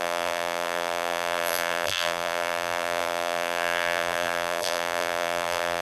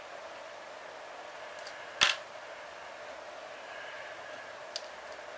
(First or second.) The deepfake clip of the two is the first